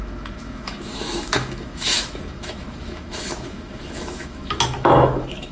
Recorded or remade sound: remade